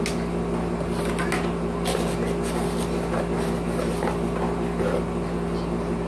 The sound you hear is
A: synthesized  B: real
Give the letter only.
B